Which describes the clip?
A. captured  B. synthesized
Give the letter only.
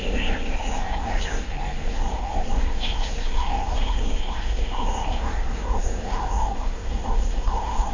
B